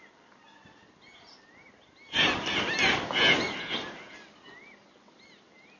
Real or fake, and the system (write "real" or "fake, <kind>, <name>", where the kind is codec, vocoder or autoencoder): real